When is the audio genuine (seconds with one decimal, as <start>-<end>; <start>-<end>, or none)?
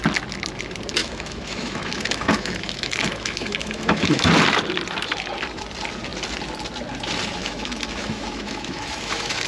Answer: 0.0-1.0; 4.3-7.4